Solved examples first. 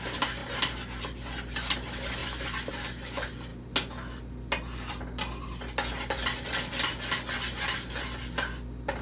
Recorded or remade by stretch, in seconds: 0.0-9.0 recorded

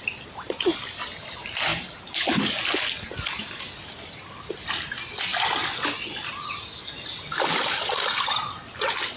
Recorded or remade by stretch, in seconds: 0.0-9.2 recorded

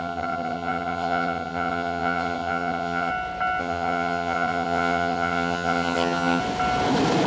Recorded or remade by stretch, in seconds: 0.0-3.1 remade; 3.1-3.6 recorded; 3.6-6.4 remade; 6.4-7.3 recorded

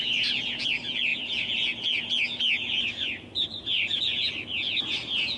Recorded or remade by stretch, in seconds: 0.0-5.4 recorded